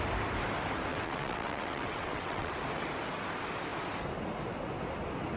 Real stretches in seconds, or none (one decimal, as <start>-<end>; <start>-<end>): 0.0-0.9; 2.5-5.4